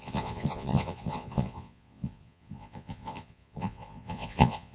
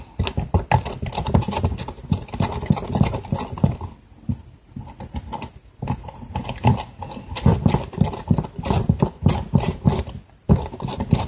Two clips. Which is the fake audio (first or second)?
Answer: first